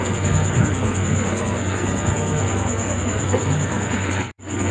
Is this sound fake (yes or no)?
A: yes